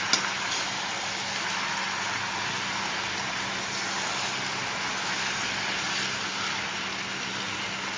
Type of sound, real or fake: real